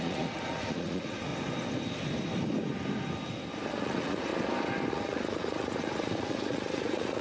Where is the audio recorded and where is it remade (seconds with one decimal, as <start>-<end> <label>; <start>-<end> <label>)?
0.0-1.3 remade; 1.3-3.8 recorded; 3.8-4.3 remade; 4.3-4.9 recorded; 4.9-7.2 remade